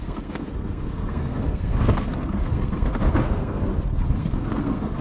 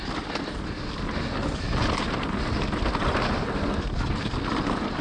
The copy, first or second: first